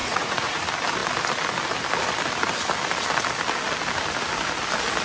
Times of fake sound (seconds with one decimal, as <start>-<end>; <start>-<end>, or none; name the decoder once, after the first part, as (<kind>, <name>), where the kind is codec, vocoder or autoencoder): 0.0-0.6 (vocoder, Vocos)